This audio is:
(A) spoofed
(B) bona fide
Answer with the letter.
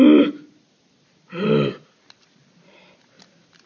B